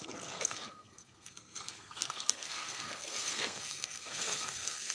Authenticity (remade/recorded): remade